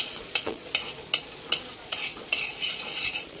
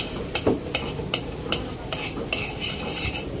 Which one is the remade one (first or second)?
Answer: first